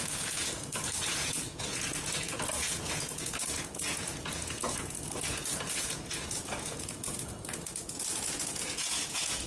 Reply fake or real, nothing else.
fake